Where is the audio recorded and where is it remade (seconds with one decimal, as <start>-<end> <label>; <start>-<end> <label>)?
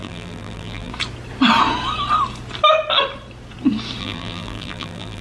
0.0-0.9 remade; 0.9-4.0 recorded; 4.0-5.2 remade